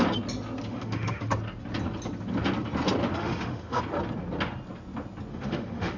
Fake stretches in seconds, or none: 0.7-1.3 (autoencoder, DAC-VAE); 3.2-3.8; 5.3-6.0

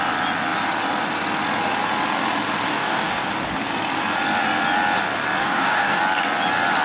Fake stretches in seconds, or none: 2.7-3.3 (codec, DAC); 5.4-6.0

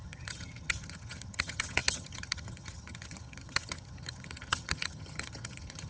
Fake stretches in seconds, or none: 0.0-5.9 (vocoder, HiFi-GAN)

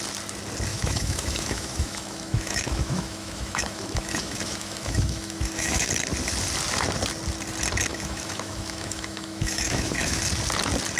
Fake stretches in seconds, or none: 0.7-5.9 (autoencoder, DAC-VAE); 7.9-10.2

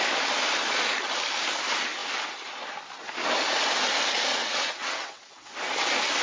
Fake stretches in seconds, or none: 4.3-5.5 (vocoder, WaveNeXt)

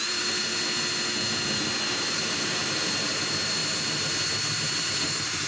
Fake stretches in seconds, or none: 0.0-0.5 (vocoder, BigVGAN v2); 1.9-3.6; 5.0-5.5